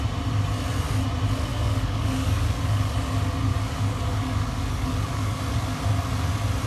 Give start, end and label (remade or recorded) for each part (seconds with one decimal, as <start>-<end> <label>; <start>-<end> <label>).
0.0-1.5 recorded; 1.5-2.9 remade; 2.9-3.5 recorded; 3.5-5.4 remade; 5.4-6.7 recorded